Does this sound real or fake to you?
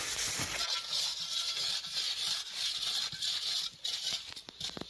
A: real